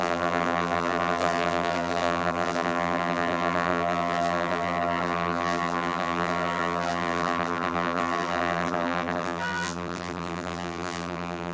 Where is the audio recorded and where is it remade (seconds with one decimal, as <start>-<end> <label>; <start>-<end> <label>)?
0.0-11.5 remade